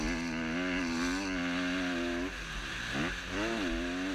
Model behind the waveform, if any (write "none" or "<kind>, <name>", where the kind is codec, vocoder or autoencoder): none